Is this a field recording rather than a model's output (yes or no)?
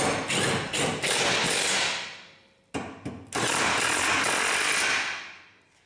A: yes